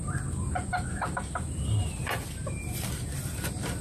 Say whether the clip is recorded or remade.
recorded